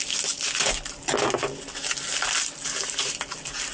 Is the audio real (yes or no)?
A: yes